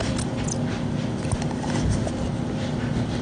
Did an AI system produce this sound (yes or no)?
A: no